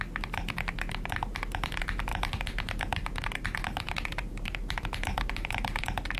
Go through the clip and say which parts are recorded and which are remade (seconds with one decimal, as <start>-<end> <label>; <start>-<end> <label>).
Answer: 0.0-2.1 recorded; 2.1-5.8 remade; 5.8-6.2 recorded